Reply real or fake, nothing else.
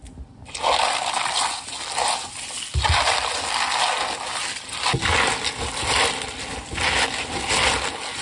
real